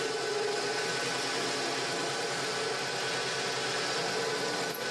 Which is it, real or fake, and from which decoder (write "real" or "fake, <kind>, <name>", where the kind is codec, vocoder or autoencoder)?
real